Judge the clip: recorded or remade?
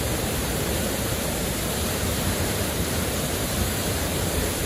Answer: remade